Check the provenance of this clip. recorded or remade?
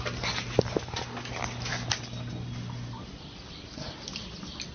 recorded